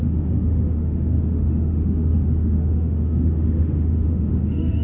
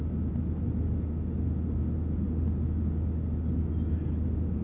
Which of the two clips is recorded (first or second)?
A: second